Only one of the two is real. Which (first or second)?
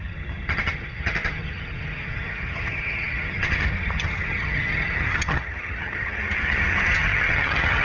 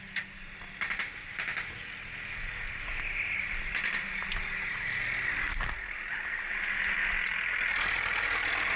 second